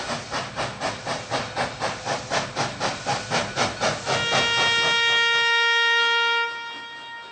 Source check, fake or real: real